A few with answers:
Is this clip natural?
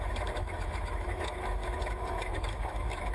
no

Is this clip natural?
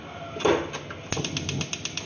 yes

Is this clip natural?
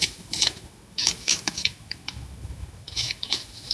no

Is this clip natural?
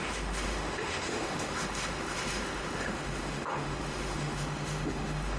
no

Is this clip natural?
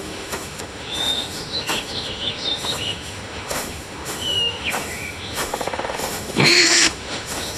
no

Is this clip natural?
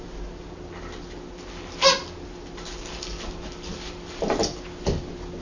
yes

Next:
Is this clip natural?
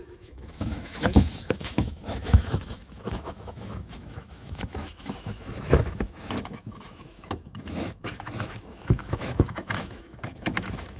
no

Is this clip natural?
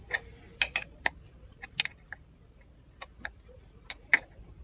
yes